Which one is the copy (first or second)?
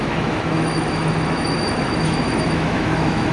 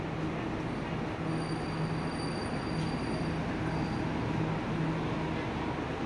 first